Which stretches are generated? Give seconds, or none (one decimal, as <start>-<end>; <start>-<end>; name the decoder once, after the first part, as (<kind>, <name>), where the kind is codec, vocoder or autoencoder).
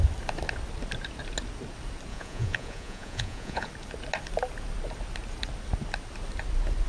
2.1-3.7 (vocoder, Vocos)